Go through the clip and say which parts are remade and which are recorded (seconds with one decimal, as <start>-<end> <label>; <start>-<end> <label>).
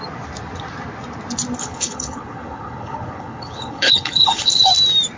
0.0-1.6 recorded; 1.6-4.7 remade; 4.7-5.2 recorded